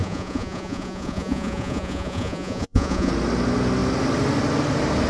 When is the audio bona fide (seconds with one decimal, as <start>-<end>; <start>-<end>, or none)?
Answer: 3.1-5.1